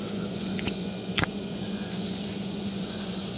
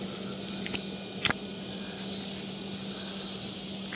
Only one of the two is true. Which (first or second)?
second